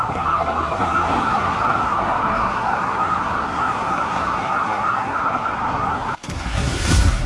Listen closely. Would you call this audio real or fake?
fake